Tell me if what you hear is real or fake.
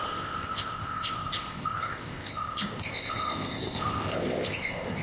fake